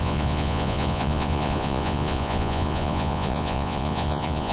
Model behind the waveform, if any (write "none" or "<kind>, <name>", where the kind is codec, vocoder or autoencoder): vocoder, Vocos